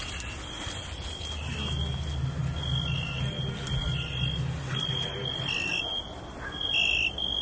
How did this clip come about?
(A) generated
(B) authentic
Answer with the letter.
B